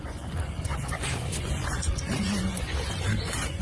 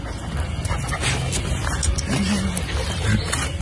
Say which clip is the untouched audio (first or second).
second